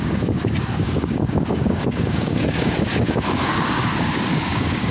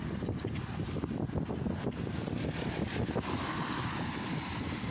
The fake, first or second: first